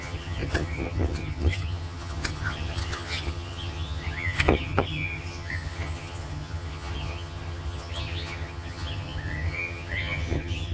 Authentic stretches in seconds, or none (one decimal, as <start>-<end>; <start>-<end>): none